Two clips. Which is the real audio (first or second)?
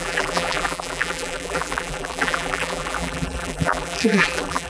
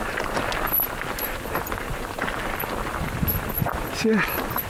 second